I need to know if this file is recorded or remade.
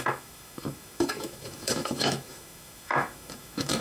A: remade